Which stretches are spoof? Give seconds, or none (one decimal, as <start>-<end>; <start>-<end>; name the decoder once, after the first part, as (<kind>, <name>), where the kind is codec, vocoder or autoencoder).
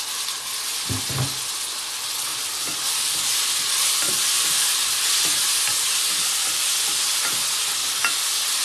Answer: 2.3-7.2 (vocoder, BigVGAN v2)